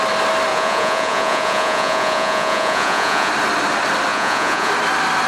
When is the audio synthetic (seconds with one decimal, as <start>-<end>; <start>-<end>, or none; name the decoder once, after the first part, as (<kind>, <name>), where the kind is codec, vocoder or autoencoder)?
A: 0.5-3.3 (vocoder, Vocos); 4.1-4.7

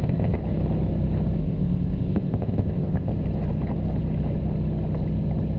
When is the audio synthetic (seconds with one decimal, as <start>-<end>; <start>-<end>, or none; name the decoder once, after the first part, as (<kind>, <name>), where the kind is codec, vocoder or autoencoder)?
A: 0.0-0.4 (codec, ZipCodec); 1.4-3.1

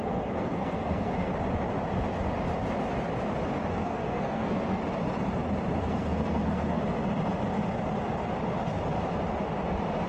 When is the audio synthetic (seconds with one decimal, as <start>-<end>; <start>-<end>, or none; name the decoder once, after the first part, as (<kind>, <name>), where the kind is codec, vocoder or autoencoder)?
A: 0.0-1.3 (codec, SNAC); 3.7-4.8; 5.8-6.8